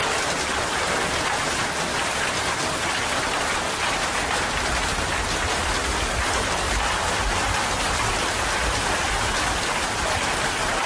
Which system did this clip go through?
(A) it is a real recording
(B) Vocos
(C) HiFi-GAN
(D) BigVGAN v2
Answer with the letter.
A